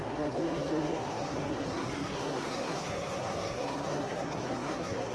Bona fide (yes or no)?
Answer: no